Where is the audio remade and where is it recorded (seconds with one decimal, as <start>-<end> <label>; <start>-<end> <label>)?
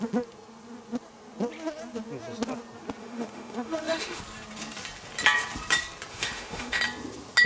0.0-3.0 recorded; 3.0-4.2 remade; 4.2-6.1 recorded; 6.1-6.8 remade; 6.8-7.5 recorded